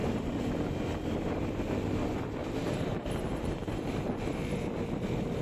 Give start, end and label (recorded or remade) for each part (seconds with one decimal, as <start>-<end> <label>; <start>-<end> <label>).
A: 0.0-2.4 recorded; 2.4-4.2 remade; 4.2-5.4 recorded